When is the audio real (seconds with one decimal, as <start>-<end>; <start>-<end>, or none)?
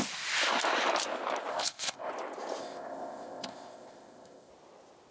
0.0-1.5; 2.1-2.6; 4.5-5.1